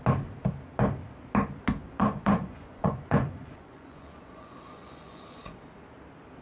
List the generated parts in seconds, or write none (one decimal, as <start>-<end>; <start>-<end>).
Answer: 1.8-5.6